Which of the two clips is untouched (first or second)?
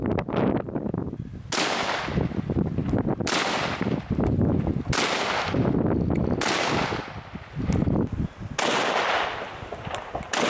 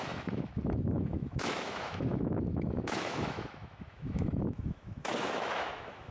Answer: first